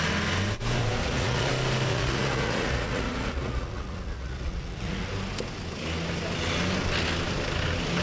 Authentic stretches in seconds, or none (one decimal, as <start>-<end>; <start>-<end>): 0.0-1.0; 1.5-1.9; 5.1-8.0